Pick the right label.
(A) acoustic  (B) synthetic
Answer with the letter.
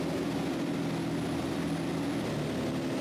A